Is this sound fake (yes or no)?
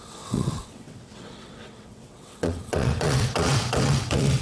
yes